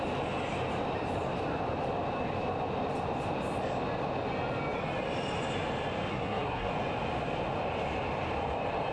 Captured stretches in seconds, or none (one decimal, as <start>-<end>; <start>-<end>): 0.0-6.1; 6.7-8.9